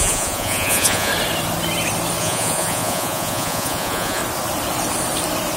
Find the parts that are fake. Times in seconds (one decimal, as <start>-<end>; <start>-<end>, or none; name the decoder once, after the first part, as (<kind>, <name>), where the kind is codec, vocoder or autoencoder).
0.0-1.1 (vocoder, Vocos); 2.2-4.2